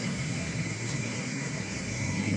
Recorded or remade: remade